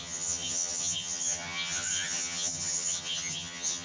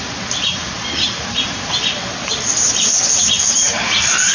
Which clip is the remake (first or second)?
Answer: first